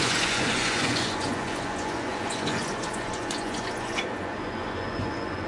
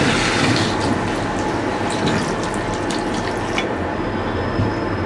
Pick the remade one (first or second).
first